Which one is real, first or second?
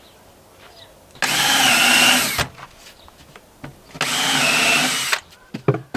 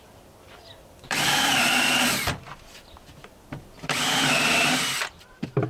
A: first